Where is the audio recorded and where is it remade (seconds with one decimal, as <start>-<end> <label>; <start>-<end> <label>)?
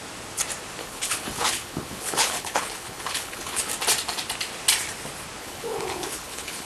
0.0-0.8 recorded; 0.8-3.7 remade; 3.7-5.4 recorded; 5.4-6.7 remade